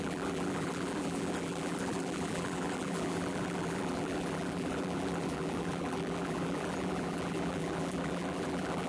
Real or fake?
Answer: fake